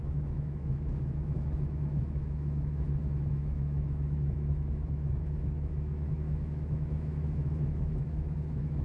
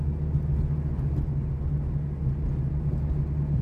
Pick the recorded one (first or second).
second